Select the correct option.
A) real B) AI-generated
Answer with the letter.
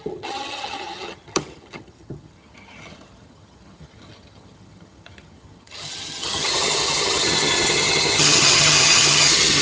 B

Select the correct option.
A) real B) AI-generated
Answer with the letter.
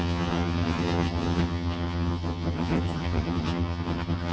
B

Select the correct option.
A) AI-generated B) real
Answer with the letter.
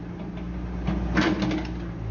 B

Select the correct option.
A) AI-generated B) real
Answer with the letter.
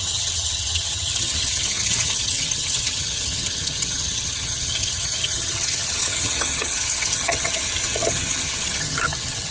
A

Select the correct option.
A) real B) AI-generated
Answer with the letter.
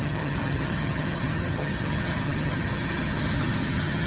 B